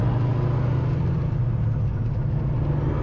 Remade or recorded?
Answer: recorded